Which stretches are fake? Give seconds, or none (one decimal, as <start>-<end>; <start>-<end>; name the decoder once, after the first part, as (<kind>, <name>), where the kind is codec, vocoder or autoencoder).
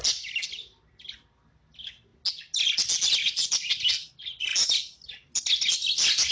none